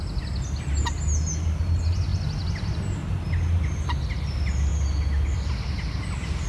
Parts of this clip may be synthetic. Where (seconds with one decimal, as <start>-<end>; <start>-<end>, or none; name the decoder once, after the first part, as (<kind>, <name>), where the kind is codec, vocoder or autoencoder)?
none